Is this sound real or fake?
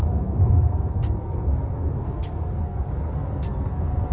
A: fake